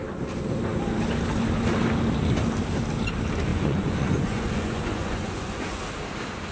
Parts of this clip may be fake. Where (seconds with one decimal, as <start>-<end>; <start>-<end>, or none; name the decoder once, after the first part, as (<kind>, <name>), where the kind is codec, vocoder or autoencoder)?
3.5-5.8 (vocoder, Vocos)